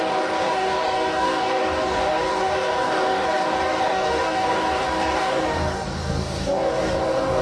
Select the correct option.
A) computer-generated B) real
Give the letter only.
A